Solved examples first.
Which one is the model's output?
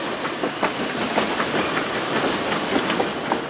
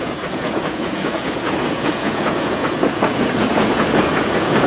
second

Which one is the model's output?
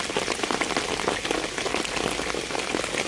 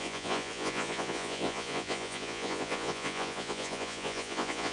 second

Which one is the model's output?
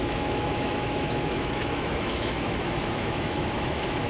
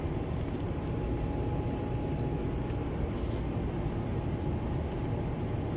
first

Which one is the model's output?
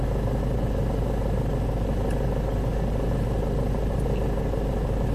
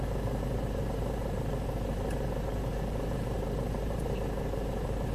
second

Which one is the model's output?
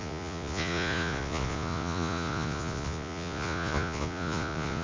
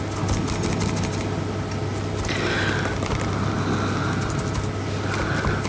first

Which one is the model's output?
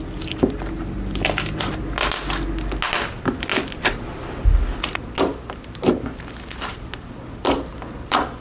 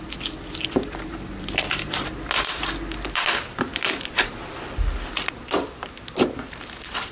second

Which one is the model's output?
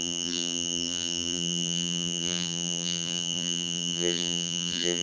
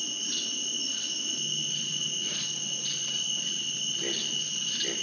first